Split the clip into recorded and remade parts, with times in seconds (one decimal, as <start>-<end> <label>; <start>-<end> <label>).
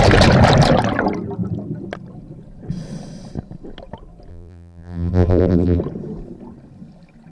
0.0-4.3 recorded; 4.3-5.8 remade; 5.8-7.3 recorded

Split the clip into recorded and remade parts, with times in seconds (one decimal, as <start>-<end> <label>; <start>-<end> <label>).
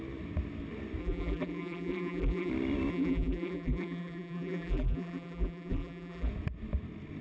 0.0-1.0 recorded; 1.0-2.5 remade; 2.5-2.9 recorded; 2.9-6.3 remade; 6.3-7.2 recorded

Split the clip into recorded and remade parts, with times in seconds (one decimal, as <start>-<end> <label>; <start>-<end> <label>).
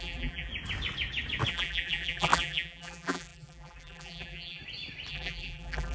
0.0-0.5 remade; 0.5-1.5 recorded; 1.5-4.6 remade; 4.6-5.1 recorded; 5.1-5.9 remade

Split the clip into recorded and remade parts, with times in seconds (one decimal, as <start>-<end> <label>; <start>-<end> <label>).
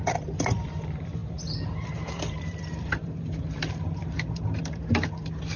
0.0-5.6 remade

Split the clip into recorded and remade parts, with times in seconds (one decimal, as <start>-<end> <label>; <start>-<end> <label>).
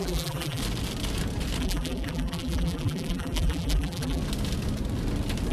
0.0-0.6 remade; 0.6-1.6 recorded; 1.6-4.2 remade; 4.2-5.5 recorded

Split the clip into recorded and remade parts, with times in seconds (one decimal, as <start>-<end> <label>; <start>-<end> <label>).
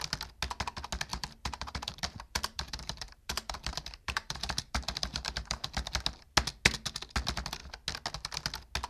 0.0-1.1 recorded; 1.1-5.9 remade; 5.9-8.9 recorded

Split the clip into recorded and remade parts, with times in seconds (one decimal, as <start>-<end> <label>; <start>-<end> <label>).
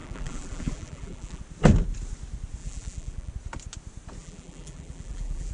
0.0-1.4 remade; 1.4-2.6 recorded; 2.6-3.3 remade; 3.3-4.2 recorded; 4.2-5.5 remade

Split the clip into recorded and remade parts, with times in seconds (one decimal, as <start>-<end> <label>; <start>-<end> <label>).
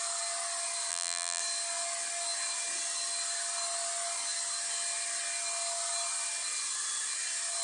0.0-0.9 recorded; 0.9-1.4 remade; 1.4-7.6 recorded